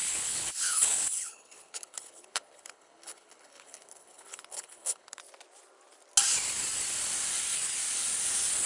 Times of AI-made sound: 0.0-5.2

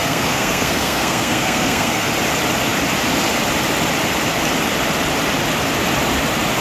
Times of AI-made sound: 0.0-2.1

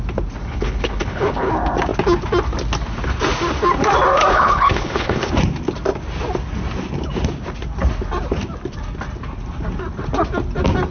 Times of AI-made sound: 0.4-1.5; 4.3-5.3